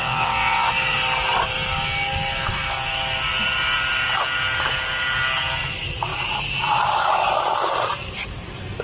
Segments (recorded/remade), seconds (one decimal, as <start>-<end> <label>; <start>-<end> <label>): 0.0-0.7 remade; 0.7-8.8 recorded